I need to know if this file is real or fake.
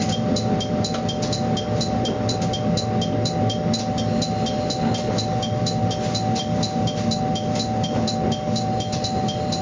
real